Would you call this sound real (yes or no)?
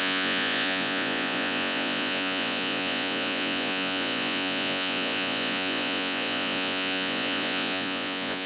no